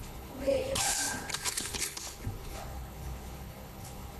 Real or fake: fake